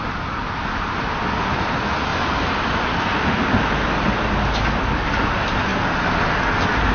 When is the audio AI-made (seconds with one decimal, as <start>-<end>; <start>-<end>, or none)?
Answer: none